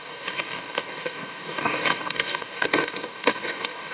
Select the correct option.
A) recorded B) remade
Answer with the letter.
B